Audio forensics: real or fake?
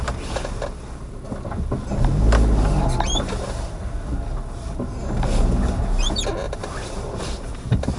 real